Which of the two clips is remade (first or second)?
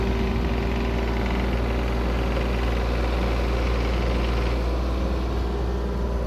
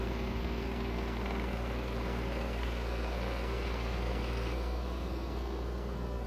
second